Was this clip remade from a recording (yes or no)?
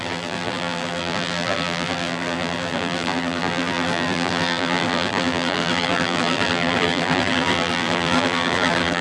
yes